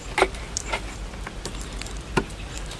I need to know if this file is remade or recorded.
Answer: remade